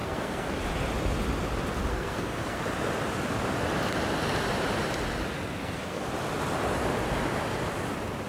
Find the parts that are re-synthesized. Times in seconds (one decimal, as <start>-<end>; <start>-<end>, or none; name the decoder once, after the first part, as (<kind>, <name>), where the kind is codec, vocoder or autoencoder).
0.0-0.6 (codec, SNAC); 1.9-2.6; 5.6-6.1

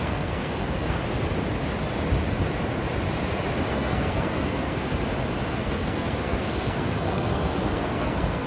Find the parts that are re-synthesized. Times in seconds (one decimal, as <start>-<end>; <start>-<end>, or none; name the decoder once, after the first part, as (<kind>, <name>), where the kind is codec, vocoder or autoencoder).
0.0-1.0 (codec, SNAC); 3.7-4.9; 5.5-8.5

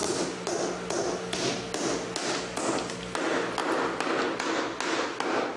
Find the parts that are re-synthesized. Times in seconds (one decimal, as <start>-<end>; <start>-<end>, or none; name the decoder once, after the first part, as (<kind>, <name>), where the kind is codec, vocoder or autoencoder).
none